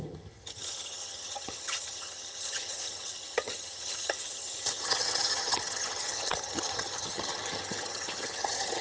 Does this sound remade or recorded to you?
remade